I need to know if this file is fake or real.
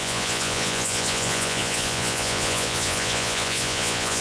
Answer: fake